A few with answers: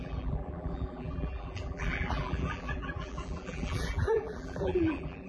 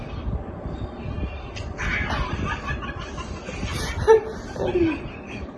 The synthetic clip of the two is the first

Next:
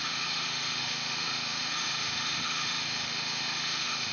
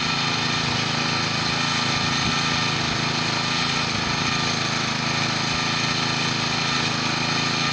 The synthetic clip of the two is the first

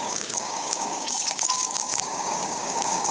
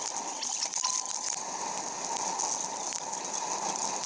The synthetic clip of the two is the first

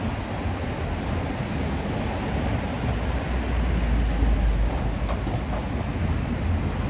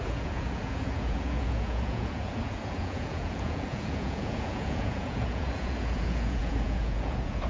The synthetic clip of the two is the second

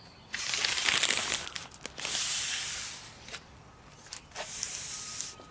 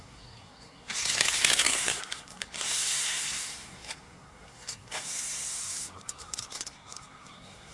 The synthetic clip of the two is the second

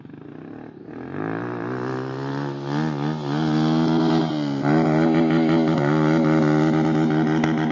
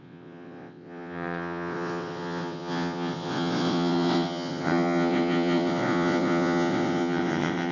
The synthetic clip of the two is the second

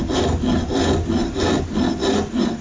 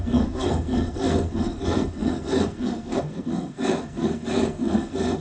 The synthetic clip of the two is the second